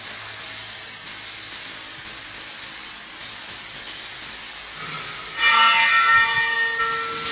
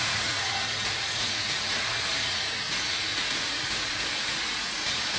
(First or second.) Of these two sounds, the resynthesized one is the second